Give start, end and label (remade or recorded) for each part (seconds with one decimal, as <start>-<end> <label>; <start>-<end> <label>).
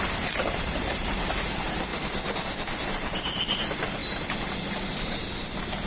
0.0-1.9 remade; 1.9-3.6 recorded; 3.6-4.0 remade; 4.0-5.0 recorded; 5.0-5.9 remade